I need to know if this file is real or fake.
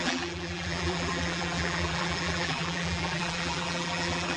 fake